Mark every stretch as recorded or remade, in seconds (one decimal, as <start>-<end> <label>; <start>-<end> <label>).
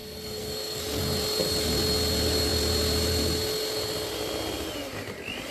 0.0-0.8 remade; 0.8-5.5 recorded